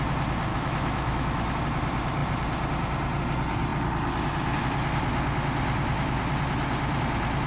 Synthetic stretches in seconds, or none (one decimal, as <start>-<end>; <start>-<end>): 0.5-1.6